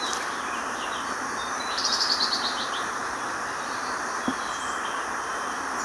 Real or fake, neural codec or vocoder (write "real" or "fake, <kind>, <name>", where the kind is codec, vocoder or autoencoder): fake, vocoder, BigVGAN v2